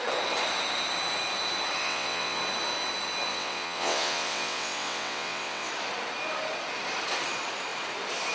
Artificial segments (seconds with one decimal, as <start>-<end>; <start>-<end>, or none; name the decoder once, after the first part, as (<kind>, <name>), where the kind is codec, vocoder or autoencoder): 1.8-2.4 (vocoder, WaveNeXt); 3.3-5.7